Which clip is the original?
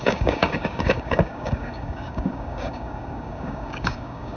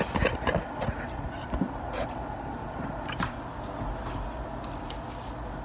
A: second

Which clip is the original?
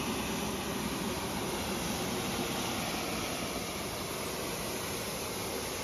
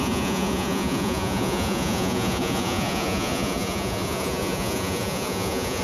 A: first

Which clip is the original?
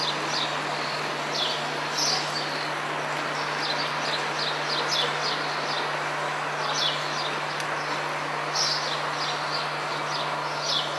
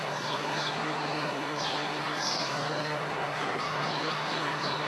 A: first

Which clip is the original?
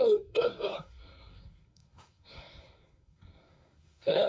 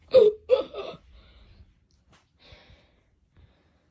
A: second